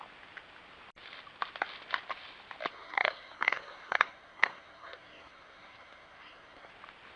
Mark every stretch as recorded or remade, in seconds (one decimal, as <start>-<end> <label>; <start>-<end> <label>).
0.0-2.7 recorded; 2.7-6.7 remade; 6.7-7.2 recorded